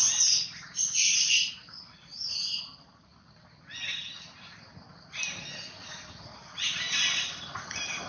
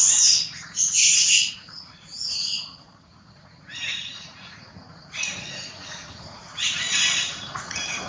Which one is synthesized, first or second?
second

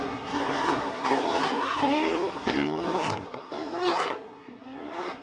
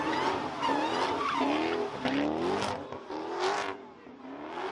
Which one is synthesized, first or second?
first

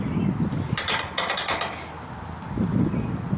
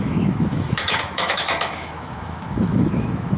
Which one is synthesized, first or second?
second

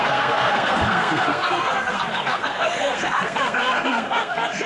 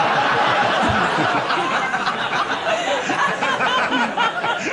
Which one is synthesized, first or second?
first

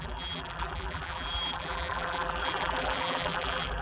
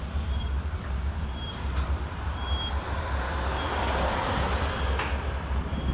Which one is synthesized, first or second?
first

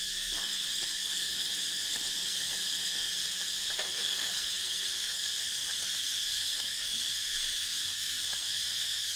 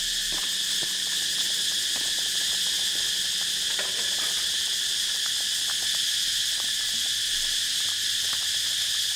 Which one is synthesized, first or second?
first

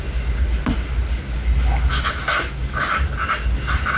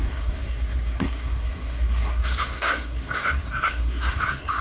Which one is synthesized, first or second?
second